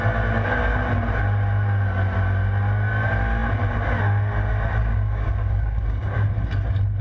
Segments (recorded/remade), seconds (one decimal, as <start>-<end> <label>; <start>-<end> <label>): 0.0-4.8 recorded; 4.8-6.3 remade; 6.3-7.0 recorded